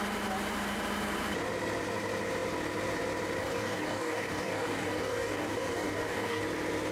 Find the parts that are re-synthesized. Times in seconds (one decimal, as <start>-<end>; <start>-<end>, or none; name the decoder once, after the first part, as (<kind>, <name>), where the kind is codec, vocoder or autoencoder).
3.4-6.4 (codec, DAC)